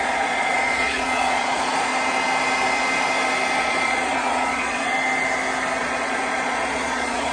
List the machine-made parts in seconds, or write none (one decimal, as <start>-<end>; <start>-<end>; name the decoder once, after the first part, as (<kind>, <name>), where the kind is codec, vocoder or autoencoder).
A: 0.0-1.9 (vocoder, Vocos); 3.6-4.9; 5.8-7.3